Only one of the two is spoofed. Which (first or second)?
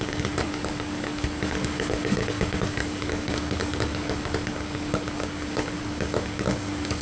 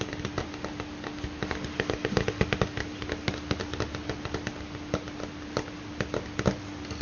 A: first